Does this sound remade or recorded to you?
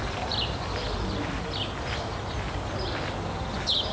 recorded